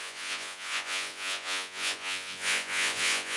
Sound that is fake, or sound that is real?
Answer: fake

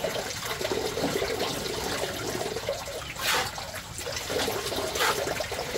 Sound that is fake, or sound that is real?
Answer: real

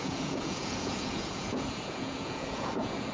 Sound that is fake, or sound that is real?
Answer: fake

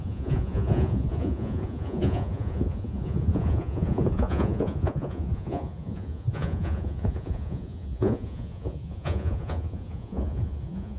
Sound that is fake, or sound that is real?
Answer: fake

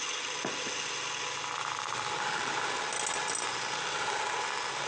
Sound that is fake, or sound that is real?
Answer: real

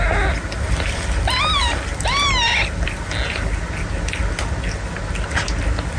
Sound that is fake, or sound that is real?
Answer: real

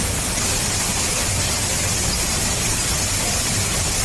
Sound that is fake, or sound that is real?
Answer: fake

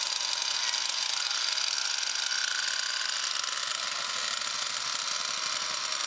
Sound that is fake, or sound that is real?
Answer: real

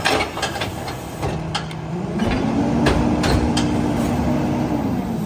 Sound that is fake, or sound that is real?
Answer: real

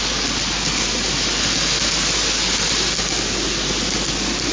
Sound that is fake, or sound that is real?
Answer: real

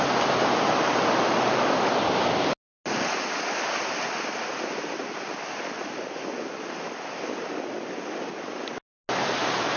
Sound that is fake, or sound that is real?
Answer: real